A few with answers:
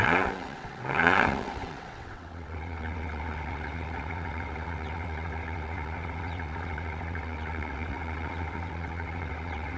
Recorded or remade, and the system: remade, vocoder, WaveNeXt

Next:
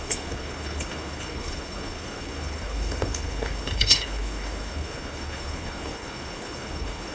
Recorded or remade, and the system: remade, codec, HILCodec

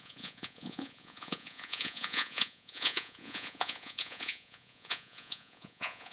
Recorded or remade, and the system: remade, vocoder, Vocos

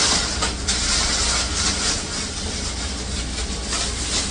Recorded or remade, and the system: recorded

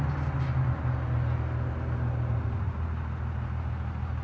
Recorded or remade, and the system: recorded